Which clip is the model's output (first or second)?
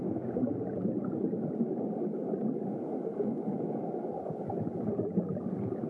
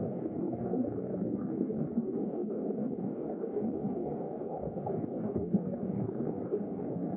second